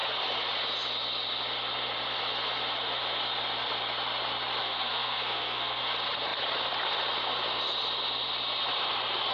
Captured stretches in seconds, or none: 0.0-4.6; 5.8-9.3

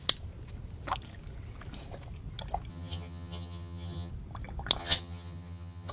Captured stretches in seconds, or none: 0.0-2.7; 4.1-4.8

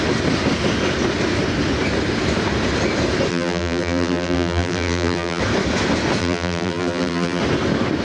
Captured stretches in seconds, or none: 0.0-3.3; 5.4-6.2; 7.4-8.0

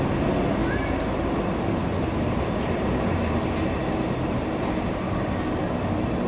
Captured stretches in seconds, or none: 0.0-6.3

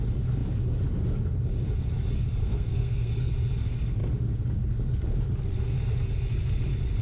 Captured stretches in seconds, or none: 0.0-2.4; 3.3-7.0